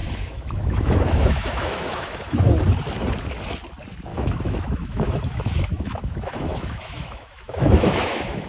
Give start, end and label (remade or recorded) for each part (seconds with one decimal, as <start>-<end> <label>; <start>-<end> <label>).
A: 0.0-2.5 remade; 2.5-4.1 recorded; 4.1-8.5 remade